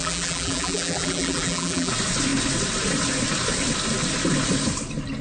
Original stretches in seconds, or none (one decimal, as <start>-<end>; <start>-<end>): 1.9-5.2